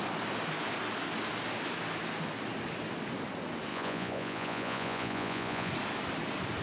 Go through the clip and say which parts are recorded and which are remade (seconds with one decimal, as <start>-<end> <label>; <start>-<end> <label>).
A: 0.0-3.7 recorded; 3.7-5.7 remade; 5.7-6.6 recorded